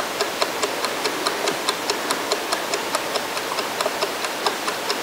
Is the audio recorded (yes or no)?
yes